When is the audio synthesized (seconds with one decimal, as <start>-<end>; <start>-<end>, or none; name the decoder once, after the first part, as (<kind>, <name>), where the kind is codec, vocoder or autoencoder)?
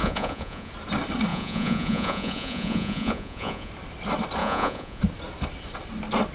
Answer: 0.0-0.7 (vocoder, Vocos); 1.3-3.7; 4.4-5.0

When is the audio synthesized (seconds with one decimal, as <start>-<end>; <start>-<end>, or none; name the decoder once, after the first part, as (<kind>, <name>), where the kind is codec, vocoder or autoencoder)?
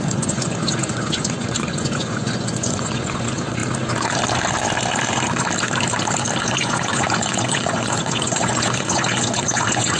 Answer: 0.0-3.6 (vocoder, Vocos); 6.4-10.0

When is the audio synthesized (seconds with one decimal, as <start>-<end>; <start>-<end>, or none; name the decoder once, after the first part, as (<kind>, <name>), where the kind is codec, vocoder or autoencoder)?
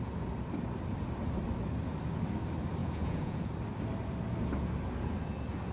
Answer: 2.8-3.5 (vocoder, Vocos)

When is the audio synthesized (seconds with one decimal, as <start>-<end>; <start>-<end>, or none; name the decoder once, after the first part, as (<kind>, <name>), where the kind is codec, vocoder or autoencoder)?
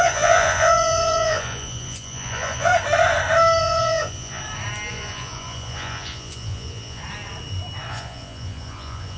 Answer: 0.0-2.7 (vocoder, Vocos); 3.6-4.4; 4.9-7.0; 7.9-9.2